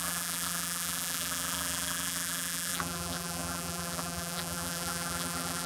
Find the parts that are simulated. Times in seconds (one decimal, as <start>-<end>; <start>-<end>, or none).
0.0-5.7

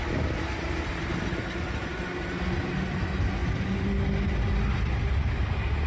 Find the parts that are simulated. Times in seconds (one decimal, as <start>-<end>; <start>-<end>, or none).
none

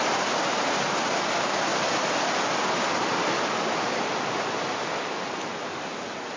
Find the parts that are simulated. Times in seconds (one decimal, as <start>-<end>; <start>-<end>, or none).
1.7-5.5

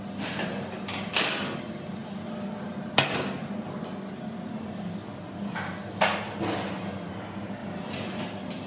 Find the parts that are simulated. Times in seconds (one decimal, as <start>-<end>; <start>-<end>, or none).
none

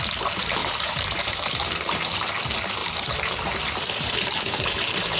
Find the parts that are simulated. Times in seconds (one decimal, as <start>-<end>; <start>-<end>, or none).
0.6-2.4; 2.8-5.2